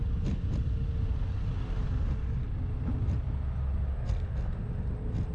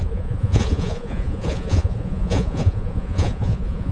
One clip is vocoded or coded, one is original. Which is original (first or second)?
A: first